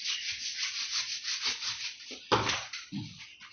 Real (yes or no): yes